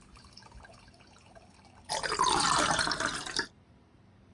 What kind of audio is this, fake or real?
fake